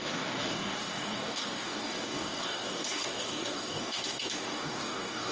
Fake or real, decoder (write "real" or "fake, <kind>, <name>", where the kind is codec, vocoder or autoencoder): fake, codec, DAC